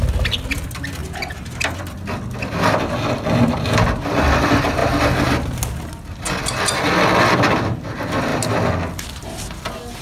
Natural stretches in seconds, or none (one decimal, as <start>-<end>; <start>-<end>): 0.0-10.0